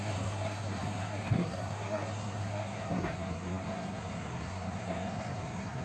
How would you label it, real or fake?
fake